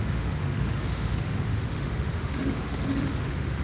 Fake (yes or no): yes